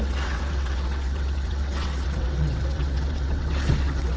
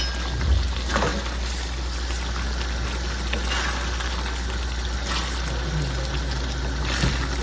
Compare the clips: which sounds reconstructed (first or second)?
first